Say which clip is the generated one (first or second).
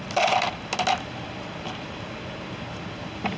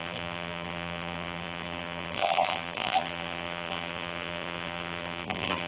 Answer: second